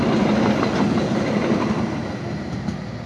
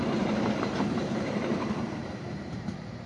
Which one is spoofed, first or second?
second